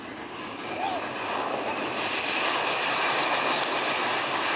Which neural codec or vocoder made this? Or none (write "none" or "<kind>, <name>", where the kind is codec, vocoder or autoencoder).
none